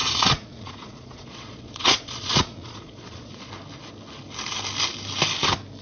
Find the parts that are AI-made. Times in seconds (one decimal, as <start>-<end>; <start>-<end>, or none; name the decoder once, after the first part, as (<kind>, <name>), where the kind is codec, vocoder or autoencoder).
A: 0.0-3.5 (vocoder, Vocos)